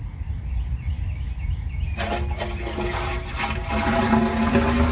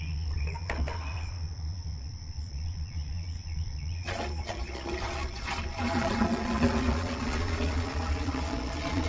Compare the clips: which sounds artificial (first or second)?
second